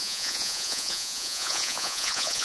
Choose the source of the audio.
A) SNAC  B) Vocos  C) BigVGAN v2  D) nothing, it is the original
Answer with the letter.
B